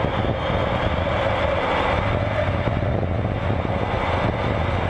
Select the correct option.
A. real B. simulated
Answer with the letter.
A